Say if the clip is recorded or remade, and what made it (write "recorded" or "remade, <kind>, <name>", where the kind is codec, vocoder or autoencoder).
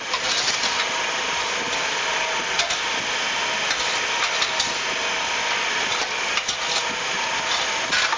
recorded